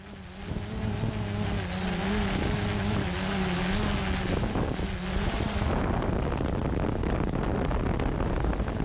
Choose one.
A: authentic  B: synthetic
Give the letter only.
A